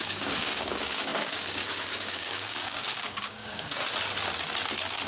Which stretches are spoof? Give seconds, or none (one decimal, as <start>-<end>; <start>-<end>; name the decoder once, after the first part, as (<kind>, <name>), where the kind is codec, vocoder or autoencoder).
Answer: 0.0-3.8 (codec, DAC)